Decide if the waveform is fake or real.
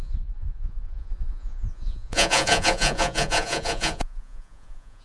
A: fake